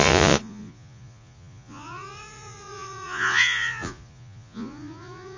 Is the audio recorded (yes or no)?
no